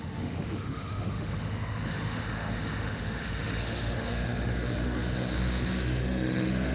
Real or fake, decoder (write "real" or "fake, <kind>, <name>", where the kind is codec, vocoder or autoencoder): fake, autoencoder, DAC-VAE